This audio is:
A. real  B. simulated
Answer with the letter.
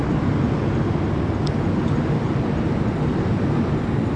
A